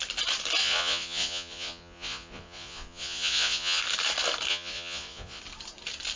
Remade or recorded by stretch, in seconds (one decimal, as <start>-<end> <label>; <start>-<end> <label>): 0.0-0.6 recorded; 0.6-3.8 remade; 3.8-4.5 recorded; 4.5-5.4 remade; 5.4-6.2 recorded